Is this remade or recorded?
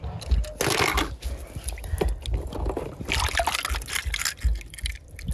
recorded